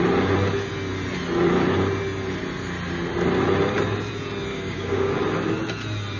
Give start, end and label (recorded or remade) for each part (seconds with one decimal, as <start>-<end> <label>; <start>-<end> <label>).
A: 0.0-4.5 recorded; 4.5-5.1 remade; 5.1-6.2 recorded